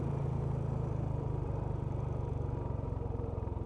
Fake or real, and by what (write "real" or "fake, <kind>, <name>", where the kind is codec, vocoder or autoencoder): fake, vocoder, BigVGAN v2